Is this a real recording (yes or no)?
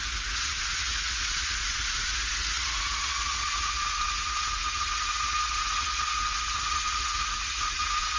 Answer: no